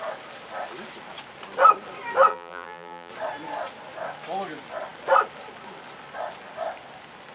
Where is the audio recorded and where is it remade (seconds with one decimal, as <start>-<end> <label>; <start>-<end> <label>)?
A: 0.0-2.3 recorded; 2.3-3.1 remade; 3.1-7.3 recorded